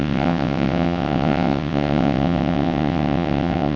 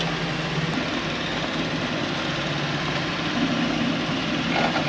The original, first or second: second